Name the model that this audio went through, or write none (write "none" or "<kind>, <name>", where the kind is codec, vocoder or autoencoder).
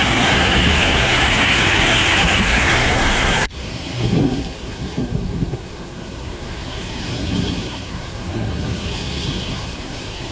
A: codec, SNAC